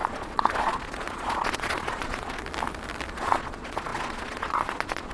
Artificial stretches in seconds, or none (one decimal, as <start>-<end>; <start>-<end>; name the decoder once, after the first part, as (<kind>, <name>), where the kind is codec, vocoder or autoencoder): 0.0-2.4 (vocoder, Vocos); 3.1-5.1